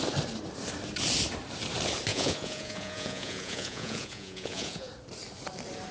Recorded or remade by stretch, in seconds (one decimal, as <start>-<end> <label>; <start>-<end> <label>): 0.0-2.1 recorded; 2.1-4.9 remade; 4.9-5.9 recorded